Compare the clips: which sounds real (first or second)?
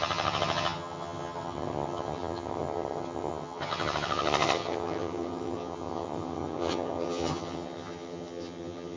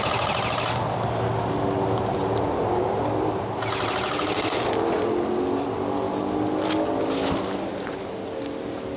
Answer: second